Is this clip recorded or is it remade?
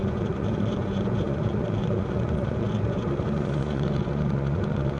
remade